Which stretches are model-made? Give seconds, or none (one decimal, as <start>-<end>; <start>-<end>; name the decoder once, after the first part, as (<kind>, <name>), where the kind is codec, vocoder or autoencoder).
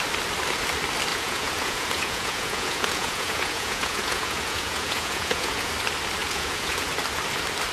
1.1-5.7 (vocoder, Vocos); 6.2-6.9